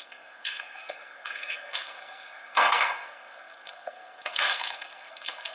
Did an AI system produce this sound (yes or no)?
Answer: yes